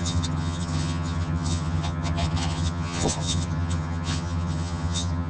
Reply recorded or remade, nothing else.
remade